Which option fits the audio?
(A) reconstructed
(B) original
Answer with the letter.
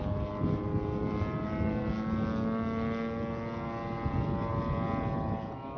B